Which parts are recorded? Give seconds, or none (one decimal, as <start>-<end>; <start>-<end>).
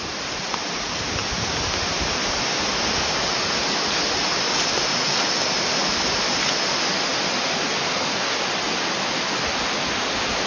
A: 0.0-10.5